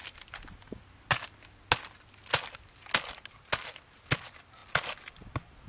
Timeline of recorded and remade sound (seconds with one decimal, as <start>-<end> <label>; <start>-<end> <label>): 0.0-4.6 recorded; 4.6-5.7 remade